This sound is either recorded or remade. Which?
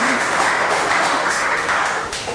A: remade